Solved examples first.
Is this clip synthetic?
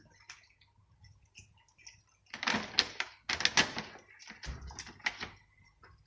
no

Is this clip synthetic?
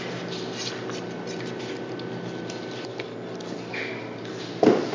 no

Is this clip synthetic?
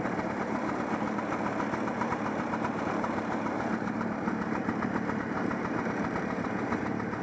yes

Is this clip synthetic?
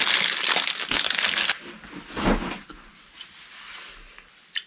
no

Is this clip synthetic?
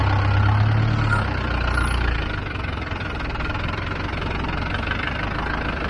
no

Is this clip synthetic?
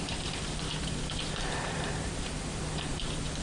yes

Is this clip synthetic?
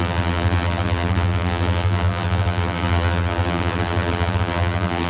yes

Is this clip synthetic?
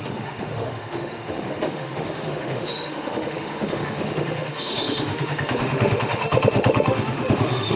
yes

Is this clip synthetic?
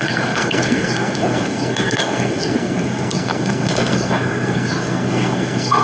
yes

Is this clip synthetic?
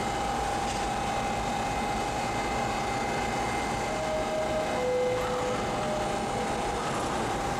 no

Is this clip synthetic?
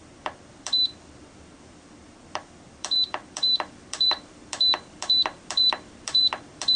yes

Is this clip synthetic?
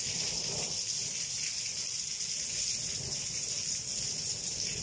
no